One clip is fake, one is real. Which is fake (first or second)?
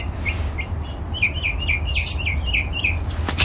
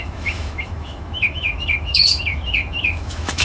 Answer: second